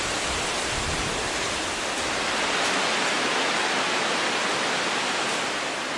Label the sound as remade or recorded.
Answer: recorded